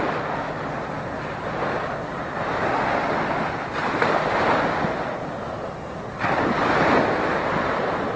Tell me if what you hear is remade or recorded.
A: recorded